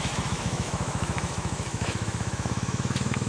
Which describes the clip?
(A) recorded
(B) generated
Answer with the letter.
B